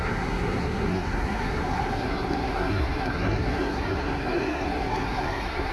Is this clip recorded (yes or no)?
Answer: no